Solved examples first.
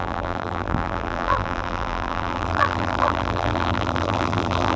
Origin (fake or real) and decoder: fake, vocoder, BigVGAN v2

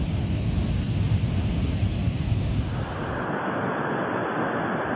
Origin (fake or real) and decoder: real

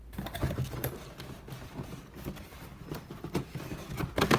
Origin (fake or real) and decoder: real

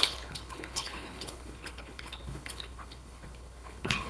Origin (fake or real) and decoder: fake, codec, HILCodec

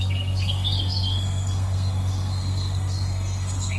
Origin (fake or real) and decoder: fake, codec, SNAC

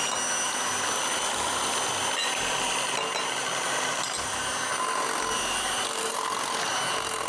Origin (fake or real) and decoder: real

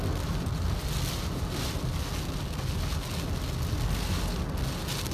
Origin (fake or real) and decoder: real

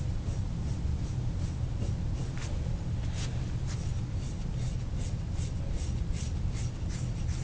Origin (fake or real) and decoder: real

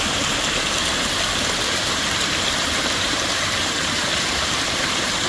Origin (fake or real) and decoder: fake, vocoder, BigVGAN v2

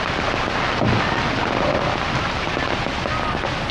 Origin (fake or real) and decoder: real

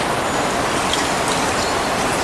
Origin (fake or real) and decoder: real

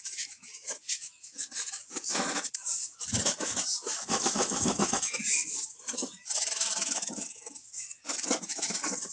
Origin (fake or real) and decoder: fake, autoencoder, DAC-VAE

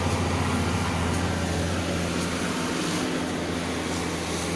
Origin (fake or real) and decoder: real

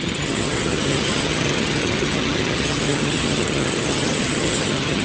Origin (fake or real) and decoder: fake, vocoder, HiFi-GAN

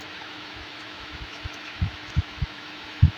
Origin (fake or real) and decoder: fake, autoencoder, DAC-VAE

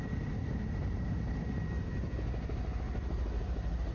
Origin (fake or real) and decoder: fake, vocoder, BigVGAN v2